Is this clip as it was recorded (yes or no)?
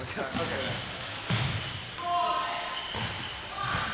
yes